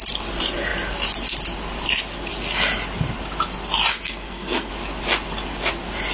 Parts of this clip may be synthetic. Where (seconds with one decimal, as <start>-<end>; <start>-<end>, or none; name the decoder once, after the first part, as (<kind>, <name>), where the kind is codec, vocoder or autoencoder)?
3.9-4.7 (codec, SNAC)